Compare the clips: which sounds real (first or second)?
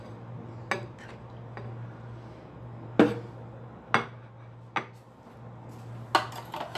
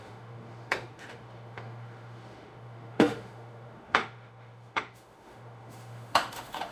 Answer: first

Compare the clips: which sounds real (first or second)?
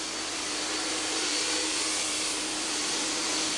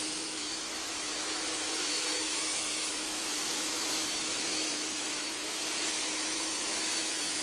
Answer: first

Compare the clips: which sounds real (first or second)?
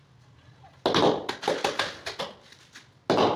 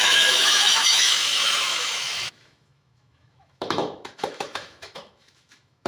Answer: first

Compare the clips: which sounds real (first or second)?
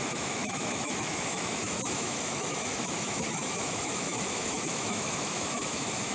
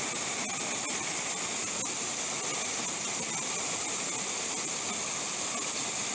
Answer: second